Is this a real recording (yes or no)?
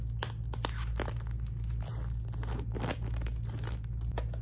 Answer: yes